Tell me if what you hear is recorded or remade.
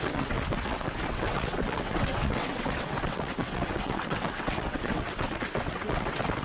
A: remade